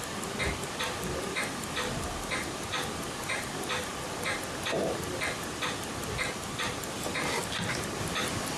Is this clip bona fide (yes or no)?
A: yes